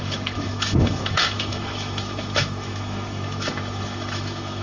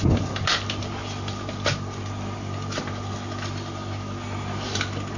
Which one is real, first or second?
second